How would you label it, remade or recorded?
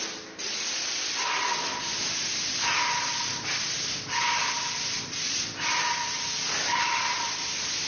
recorded